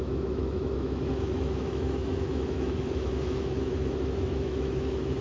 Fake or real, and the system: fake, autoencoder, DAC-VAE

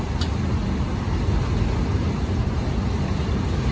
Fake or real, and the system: real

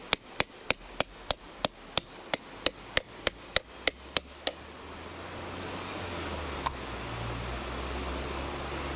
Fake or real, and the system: real